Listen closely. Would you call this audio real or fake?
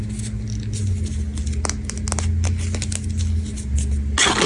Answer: real